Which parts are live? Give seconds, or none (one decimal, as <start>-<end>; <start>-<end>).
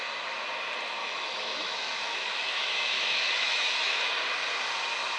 0.0-1.0; 4.1-5.2